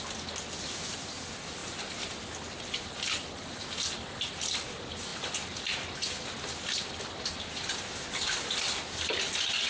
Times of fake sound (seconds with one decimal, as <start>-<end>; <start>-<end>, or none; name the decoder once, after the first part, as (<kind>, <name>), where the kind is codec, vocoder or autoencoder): none